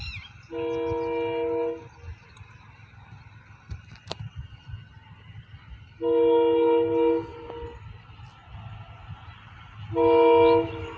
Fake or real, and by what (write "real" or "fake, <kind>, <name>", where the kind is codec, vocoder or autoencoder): real